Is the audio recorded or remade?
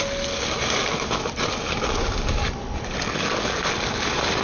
recorded